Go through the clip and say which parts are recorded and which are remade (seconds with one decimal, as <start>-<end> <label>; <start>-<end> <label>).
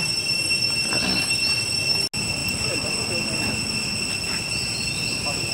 0.0-5.5 recorded